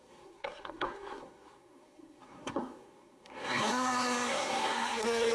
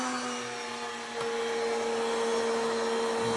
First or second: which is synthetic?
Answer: first